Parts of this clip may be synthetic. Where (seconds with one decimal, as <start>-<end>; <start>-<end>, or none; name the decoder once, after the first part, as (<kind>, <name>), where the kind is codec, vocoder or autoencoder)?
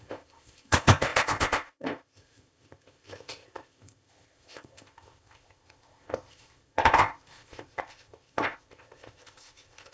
0.0-9.9 (codec, ZipCodec)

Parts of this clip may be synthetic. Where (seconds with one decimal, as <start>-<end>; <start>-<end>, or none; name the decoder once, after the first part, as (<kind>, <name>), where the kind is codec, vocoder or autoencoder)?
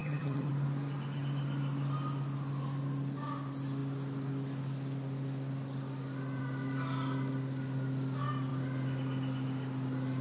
0.0-0.5 (vocoder, HiFi-GAN)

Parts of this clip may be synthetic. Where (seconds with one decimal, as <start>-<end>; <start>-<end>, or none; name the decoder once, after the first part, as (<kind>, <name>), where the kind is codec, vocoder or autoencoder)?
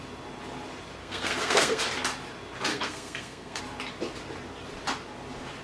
1.0-1.8 (codec, SNAC); 2.7-3.6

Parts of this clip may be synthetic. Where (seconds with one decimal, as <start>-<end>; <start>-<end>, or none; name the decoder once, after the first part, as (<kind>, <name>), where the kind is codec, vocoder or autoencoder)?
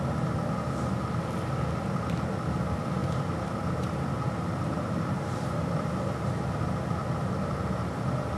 3.0-6.4 (vocoder, BigVGAN v2)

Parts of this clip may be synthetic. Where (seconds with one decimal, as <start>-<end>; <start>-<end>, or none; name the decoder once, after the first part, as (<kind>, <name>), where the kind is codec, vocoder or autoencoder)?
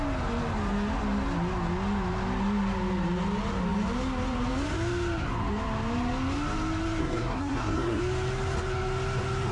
7.0-8.0 (codec, SNAC)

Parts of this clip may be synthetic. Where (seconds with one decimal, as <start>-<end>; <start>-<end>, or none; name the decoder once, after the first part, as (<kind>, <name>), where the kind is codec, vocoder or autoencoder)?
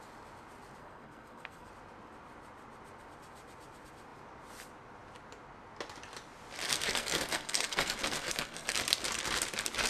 0.8-1.7 (codec, SNAC); 6.7-8.8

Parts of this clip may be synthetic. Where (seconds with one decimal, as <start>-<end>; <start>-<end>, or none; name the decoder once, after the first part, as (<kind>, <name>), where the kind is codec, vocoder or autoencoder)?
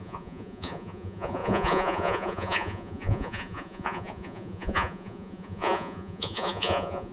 0.0-7.1 (vocoder, Vocos)